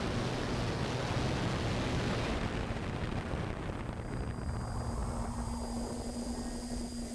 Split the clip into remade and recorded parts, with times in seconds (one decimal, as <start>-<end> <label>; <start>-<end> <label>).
0.0-7.1 recorded